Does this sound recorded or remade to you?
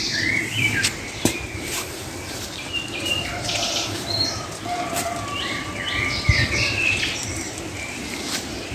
remade